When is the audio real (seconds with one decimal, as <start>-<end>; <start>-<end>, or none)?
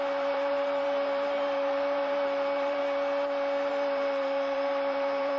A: 2.8-3.7